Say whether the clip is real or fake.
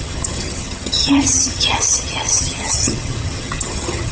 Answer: fake